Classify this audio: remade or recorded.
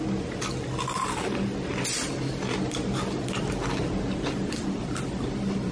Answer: recorded